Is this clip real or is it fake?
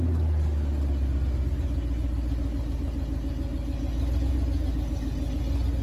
real